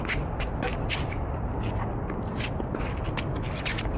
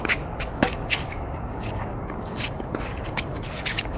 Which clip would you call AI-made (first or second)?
second